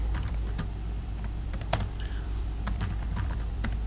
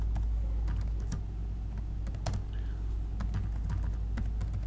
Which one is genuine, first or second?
second